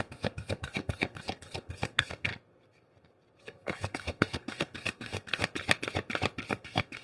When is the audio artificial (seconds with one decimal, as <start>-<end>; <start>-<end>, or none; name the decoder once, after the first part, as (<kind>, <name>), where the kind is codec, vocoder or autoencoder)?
0.0-2.3 (codec, SNAC); 3.4-5.4; 6.5-7.0